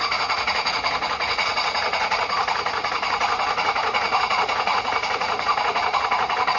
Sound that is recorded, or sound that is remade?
remade